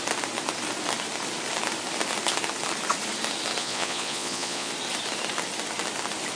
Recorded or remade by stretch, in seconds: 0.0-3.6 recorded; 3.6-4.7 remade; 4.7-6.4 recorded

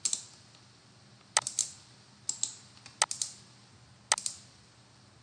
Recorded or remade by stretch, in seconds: 0.0-5.2 recorded

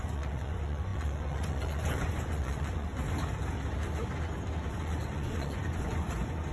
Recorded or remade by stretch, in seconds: 0.0-2.9 remade; 2.9-4.7 recorded; 4.7-6.5 remade

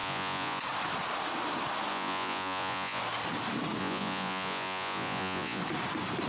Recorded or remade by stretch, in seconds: 0.0-0.6 remade; 0.6-1.9 recorded; 1.9-3.0 remade; 3.0-3.8 recorded; 3.8-5.6 remade; 5.6-6.3 recorded

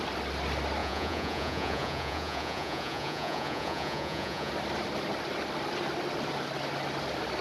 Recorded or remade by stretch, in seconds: 0.0-0.8 recorded; 0.8-4.5 remade; 4.5-7.4 recorded

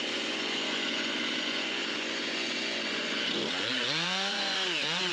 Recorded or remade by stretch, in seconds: 0.0-5.1 remade

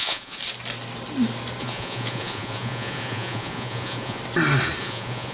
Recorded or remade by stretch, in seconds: 0.0-0.4 remade; 0.4-1.6 recorded; 1.6-4.2 remade; 4.2-4.8 recorded; 4.8-5.3 remade